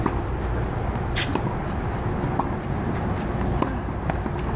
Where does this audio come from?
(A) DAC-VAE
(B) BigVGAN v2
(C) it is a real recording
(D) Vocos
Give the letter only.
C